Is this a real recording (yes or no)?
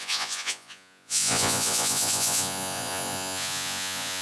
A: no